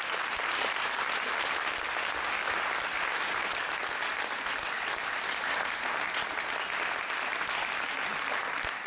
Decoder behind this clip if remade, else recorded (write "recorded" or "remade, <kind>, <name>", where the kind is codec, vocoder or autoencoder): recorded